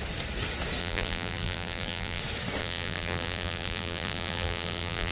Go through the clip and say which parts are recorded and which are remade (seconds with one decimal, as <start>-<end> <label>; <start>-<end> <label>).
0.0-0.8 recorded; 0.8-2.2 remade; 2.2-2.6 recorded; 2.6-5.1 remade